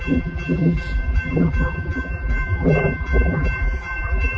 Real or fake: fake